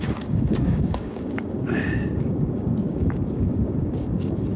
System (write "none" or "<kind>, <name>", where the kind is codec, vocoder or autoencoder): codec, DAC